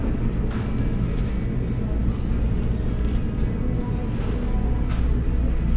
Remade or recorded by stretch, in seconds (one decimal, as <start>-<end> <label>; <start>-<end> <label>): 0.0-5.8 recorded